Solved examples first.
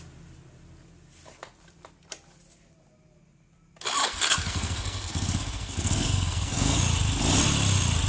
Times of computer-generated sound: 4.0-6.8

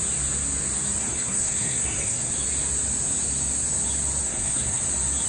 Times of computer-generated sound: 1.0-2.3; 4.2-4.8

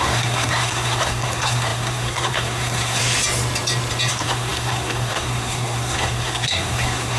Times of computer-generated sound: 0.0-3.0; 4.1-7.2

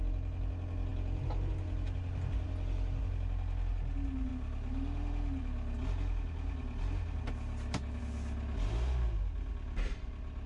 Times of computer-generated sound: none